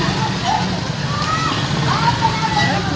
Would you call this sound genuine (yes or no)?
yes